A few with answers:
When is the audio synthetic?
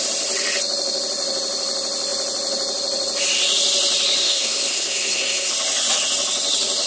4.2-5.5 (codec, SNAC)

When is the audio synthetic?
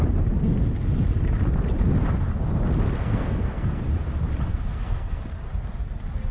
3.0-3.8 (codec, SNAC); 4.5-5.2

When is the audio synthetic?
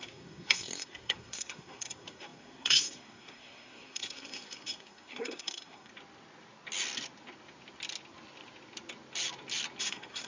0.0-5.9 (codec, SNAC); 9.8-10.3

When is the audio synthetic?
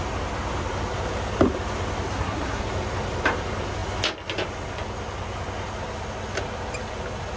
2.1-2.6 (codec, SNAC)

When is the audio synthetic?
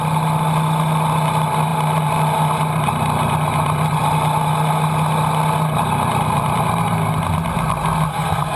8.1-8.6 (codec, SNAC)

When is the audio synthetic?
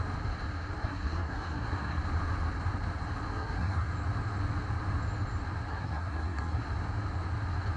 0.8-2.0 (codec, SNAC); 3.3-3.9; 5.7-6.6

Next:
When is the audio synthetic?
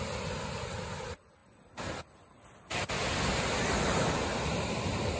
none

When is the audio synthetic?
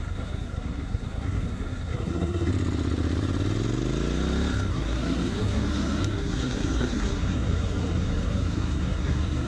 0.0-2.5 (codec, SNAC); 4.7-9.5